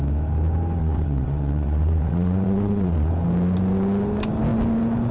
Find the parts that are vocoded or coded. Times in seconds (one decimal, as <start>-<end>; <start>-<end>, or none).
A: 0.8-3.1